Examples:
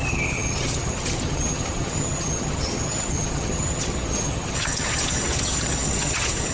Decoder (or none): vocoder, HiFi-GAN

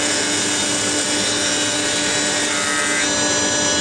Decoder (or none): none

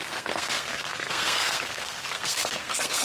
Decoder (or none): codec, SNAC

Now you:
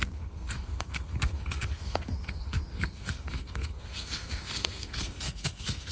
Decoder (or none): codec, SNAC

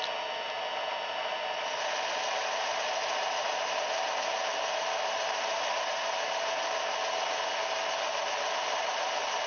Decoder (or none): none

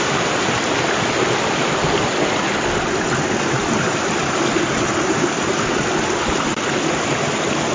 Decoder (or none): none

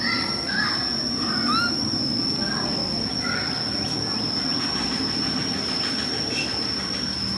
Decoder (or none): none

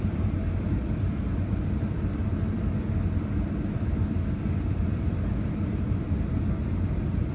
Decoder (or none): none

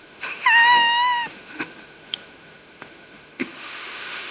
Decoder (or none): autoencoder, DAC-VAE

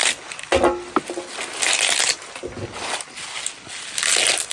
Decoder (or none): none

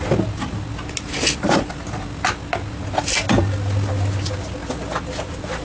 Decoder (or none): none